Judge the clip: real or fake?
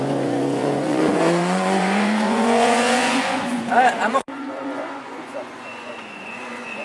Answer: fake